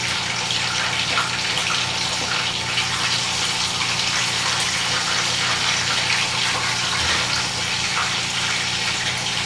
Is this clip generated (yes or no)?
no